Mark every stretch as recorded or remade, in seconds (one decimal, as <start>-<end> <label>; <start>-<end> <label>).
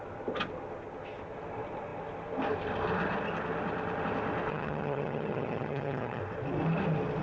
0.0-4.5 recorded; 4.5-6.2 remade; 6.2-7.2 recorded